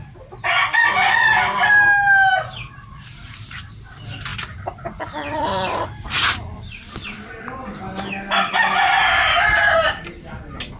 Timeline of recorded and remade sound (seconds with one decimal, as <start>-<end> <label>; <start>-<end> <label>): 0.0-4.3 recorded; 4.3-6.7 remade; 6.7-10.8 recorded